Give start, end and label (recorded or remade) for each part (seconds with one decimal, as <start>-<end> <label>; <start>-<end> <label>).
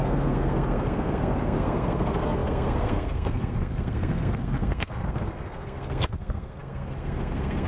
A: 0.0-7.7 remade